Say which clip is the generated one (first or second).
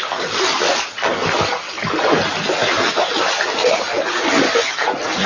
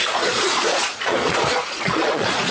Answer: second